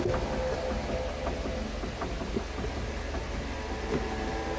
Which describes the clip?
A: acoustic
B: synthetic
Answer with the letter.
A